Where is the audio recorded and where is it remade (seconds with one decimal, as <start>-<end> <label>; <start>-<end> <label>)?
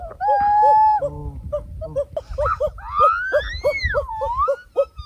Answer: 0.0-5.1 recorded